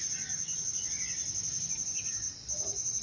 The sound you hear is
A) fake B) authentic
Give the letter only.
B